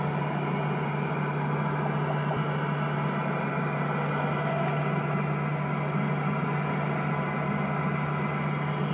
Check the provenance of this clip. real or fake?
real